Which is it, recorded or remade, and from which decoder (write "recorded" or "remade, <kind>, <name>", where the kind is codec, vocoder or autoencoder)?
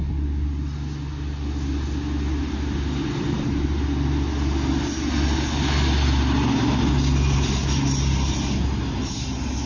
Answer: recorded